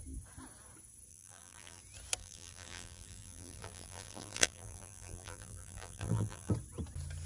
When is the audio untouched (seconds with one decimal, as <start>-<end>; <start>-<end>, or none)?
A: 0.0-1.1; 1.8-2.2; 6.5-7.3